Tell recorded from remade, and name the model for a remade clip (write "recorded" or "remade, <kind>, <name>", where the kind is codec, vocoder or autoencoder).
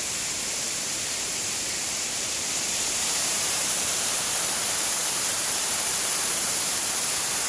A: remade, vocoder, BigVGAN v2